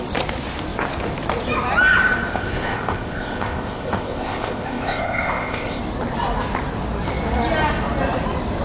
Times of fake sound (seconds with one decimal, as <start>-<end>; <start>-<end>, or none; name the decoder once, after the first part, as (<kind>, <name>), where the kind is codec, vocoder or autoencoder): 2.3-5.8 (codec, ZipCodec)

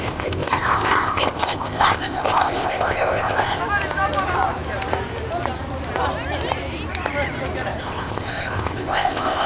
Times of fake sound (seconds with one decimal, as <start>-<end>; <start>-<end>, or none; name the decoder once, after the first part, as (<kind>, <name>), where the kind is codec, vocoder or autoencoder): 0.0-3.6 (codec, ZipCodec); 7.8-9.5